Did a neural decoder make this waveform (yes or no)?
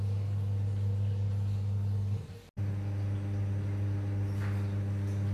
no